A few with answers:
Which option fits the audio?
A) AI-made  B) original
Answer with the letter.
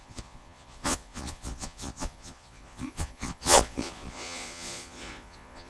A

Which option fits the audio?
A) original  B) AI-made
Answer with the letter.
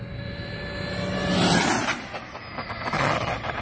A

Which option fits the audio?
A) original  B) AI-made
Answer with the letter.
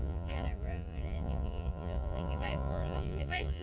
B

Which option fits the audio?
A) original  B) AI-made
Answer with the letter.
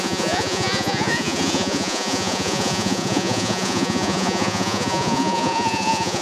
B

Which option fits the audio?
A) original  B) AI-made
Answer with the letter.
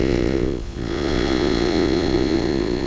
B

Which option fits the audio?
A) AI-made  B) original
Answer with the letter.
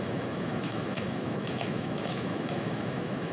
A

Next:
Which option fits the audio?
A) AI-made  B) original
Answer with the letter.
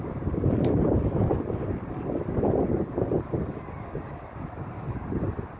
B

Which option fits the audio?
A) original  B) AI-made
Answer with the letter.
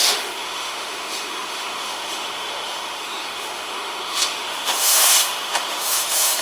B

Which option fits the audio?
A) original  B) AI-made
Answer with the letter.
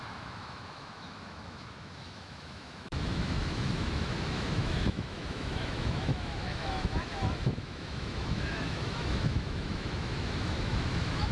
B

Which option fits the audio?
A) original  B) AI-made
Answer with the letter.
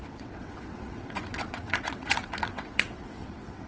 B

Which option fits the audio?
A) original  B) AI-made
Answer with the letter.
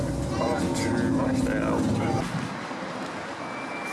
A